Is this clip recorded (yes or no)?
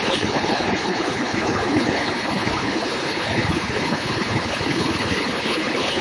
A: no